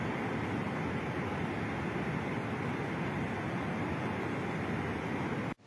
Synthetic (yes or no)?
no